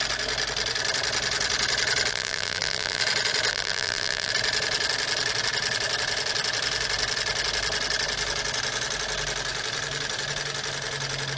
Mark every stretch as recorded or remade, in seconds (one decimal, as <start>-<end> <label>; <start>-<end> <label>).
0.0-2.1 recorded; 2.1-3.0 remade; 3.0-3.5 recorded; 3.5-4.3 remade; 4.3-11.4 recorded